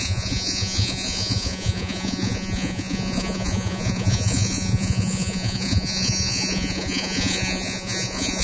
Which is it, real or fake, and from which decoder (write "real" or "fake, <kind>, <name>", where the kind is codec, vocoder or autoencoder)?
fake, vocoder, Vocos